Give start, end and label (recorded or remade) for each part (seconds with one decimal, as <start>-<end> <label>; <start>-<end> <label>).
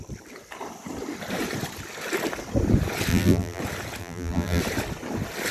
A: 0.0-3.1 recorded; 3.1-3.6 remade; 3.6-4.0 recorded; 4.0-4.6 remade; 4.6-5.5 recorded